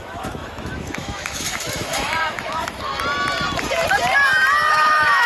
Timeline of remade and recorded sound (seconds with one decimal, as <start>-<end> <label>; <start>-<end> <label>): 0.0-2.9 remade; 2.9-4.7 recorded; 4.7-5.3 remade